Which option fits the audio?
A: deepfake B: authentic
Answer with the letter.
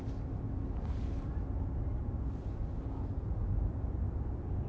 B